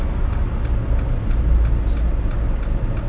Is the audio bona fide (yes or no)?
yes